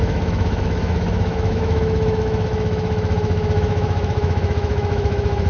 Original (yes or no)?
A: no